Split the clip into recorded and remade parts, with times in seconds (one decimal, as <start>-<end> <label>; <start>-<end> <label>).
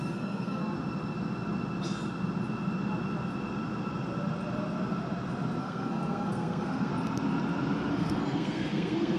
0.0-0.6 remade; 0.6-5.6 recorded; 5.6-6.9 remade; 6.9-7.9 recorded; 7.9-9.2 remade